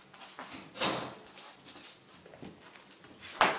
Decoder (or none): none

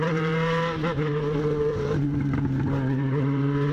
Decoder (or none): vocoder, BigVGAN v2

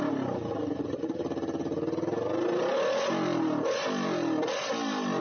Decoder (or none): none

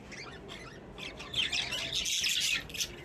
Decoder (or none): none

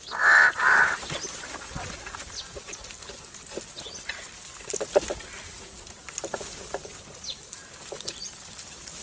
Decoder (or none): none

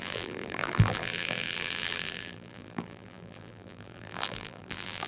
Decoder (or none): vocoder, BigVGAN v2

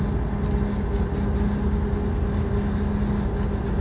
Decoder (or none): none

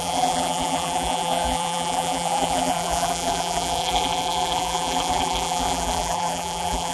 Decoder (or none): vocoder, BigVGAN v2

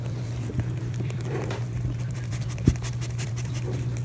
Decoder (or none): vocoder, BigVGAN v2